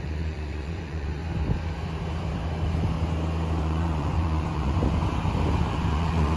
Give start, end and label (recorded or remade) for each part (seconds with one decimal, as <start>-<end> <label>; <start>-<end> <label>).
0.0-1.2 remade; 1.2-3.6 recorded; 3.6-5.0 remade; 5.0-5.6 recorded; 5.6-6.4 remade